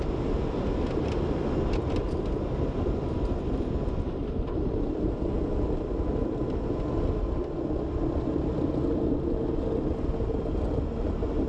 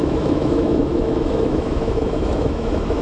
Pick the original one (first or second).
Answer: first